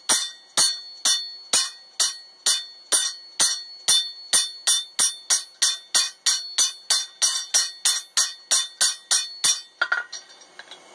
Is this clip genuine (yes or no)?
yes